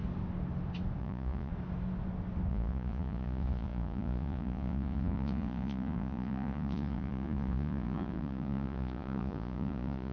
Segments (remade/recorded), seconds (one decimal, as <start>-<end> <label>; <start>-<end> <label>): 0.0-1.0 recorded; 1.0-1.5 remade; 1.5-2.5 recorded; 2.5-10.1 remade